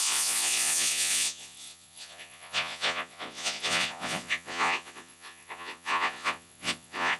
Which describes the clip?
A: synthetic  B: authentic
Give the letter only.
A